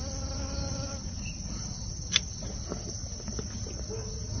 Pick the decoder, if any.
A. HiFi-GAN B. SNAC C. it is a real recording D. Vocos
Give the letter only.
C